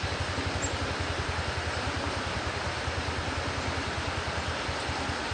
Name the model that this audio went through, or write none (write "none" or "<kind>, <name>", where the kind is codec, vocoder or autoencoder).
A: none